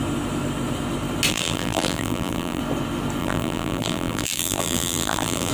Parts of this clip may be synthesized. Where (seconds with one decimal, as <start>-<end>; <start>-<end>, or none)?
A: 1.3-2.6; 3.2-5.5